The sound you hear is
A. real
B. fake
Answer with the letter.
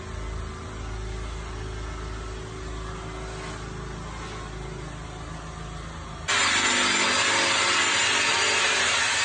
A